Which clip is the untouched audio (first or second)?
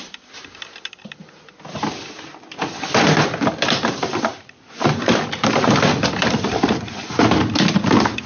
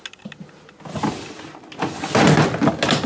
second